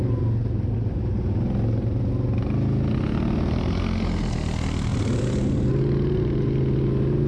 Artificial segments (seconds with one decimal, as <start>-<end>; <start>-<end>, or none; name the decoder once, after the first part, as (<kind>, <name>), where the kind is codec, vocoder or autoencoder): 4.9-5.7 (vocoder, BigVGAN v2)